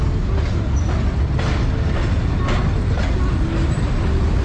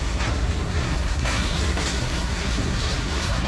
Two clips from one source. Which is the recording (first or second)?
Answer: first